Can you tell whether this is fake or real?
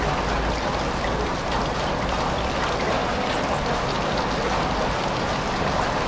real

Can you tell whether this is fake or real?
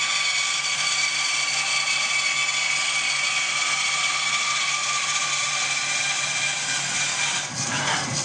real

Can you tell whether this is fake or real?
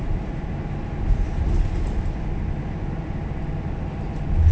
real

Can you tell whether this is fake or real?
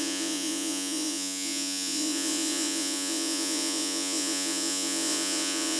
fake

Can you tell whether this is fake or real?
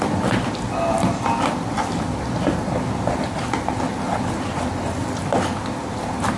real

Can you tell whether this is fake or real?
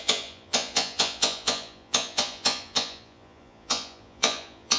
fake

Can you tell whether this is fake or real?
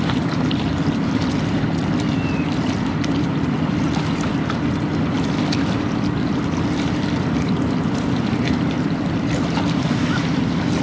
real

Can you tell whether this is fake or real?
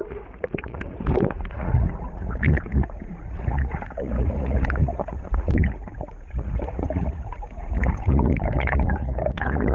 fake